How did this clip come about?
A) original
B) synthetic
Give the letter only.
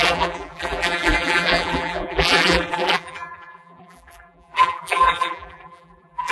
B